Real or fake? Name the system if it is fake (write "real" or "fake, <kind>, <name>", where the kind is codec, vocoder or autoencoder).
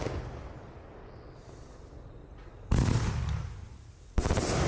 real